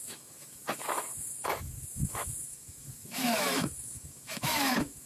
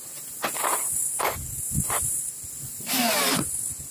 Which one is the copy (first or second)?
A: first